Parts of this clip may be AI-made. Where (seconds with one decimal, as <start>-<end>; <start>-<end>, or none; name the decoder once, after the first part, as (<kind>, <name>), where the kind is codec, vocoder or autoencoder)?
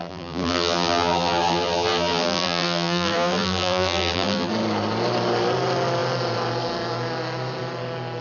0.0-4.5 (vocoder, BigVGAN v2)